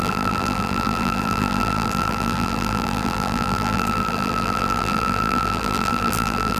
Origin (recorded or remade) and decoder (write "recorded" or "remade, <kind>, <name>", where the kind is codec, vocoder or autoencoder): remade, vocoder, BigVGAN v2